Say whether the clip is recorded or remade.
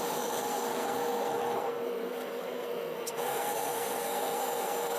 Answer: remade